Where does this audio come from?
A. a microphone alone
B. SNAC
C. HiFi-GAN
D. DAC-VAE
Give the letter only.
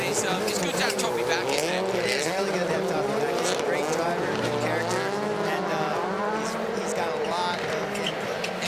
A